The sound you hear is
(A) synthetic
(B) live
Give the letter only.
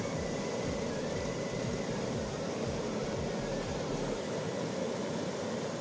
B